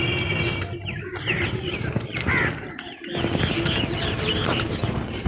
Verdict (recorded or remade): recorded